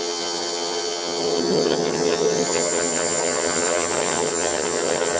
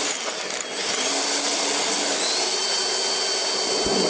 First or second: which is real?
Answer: second